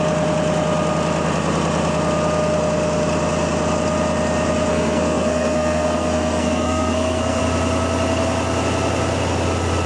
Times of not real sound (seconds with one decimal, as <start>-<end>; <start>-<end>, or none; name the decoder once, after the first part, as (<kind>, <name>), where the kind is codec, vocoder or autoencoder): 4.7-7.4 (codec, SNAC)